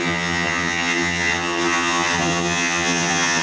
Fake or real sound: fake